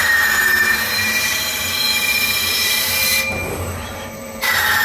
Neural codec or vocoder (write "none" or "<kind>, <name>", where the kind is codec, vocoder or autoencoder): vocoder, BigVGAN v2